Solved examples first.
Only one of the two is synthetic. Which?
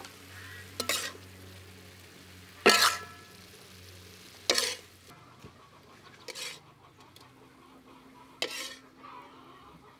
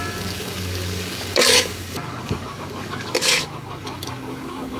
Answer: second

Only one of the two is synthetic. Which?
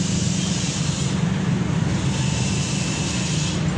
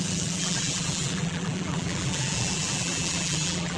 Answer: second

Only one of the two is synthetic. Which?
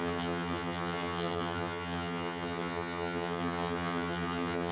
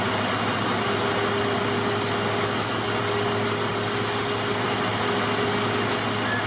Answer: first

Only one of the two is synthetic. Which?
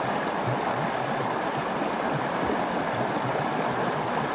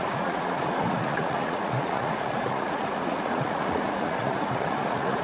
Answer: second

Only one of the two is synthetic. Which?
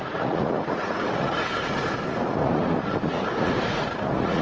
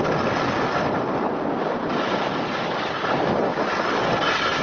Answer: first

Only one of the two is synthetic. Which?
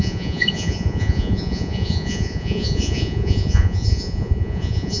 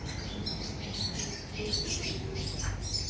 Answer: first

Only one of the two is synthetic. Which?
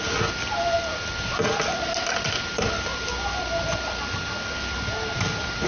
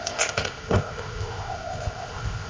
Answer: second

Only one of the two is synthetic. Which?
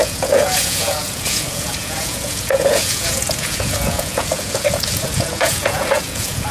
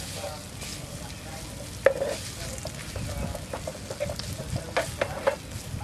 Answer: first